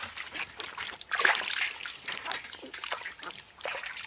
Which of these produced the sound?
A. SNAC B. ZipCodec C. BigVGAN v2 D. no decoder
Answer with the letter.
D